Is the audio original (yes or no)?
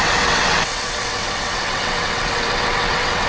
no